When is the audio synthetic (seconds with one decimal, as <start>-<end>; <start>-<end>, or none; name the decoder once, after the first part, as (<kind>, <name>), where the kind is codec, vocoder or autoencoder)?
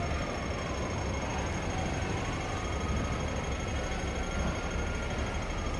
none